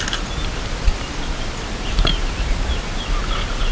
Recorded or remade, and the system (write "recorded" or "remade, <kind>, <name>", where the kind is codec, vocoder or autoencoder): recorded